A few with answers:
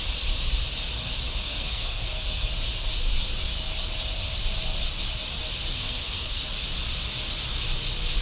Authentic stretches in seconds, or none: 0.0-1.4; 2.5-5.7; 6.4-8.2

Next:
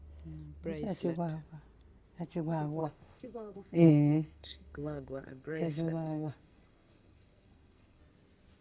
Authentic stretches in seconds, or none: 0.0-2.8; 8.0-8.6

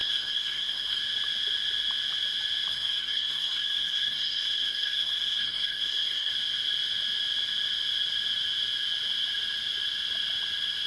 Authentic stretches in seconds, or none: 1.0-2.7; 6.3-10.9

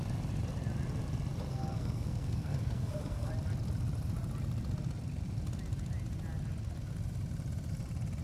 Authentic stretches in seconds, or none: 0.0-1.5; 3.3-8.2

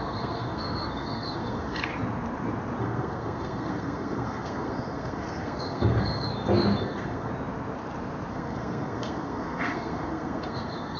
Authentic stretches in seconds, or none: 1.9-2.8; 6.3-6.8; 7.3-8.3